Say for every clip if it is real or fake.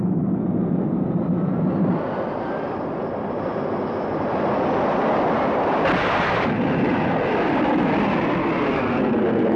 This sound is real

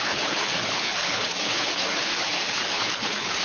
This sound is fake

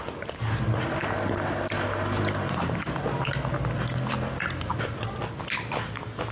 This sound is real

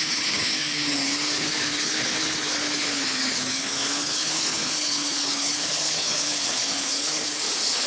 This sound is fake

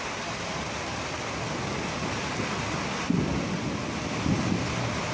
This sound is real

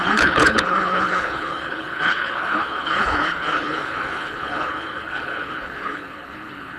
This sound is fake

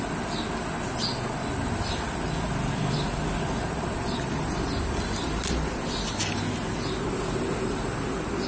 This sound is real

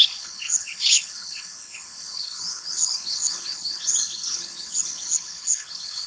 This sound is fake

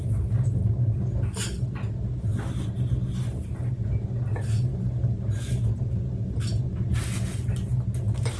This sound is real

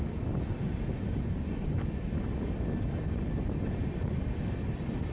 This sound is real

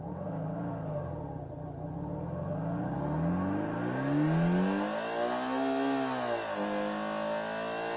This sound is real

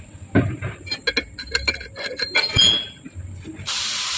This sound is real